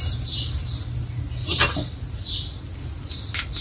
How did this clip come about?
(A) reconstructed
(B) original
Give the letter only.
B